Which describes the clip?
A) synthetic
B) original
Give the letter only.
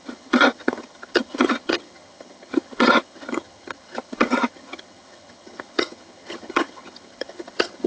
A